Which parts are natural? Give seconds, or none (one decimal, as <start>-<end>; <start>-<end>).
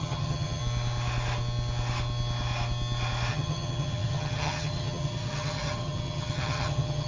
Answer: 0.6-3.3